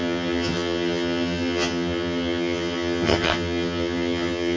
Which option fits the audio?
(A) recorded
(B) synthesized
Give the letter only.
B